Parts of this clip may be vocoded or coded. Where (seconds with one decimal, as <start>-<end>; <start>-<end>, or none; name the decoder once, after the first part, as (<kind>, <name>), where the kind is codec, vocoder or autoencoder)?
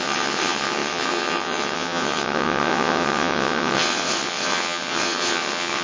0.0-5.8 (vocoder, WaveNeXt)